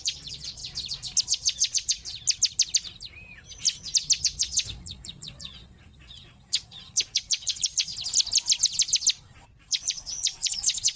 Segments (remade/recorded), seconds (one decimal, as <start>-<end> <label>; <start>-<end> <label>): 0.0-0.6 remade; 0.6-1.2 recorded; 1.2-2.0 remade; 2.0-4.2 recorded; 4.2-7.9 remade; 7.9-9.3 recorded; 9.3-11.0 remade